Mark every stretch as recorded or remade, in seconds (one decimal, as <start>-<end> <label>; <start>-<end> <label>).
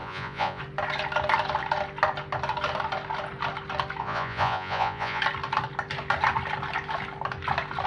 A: 0.0-0.6 remade; 0.6-4.0 recorded; 4.0-5.2 remade; 5.2-7.9 recorded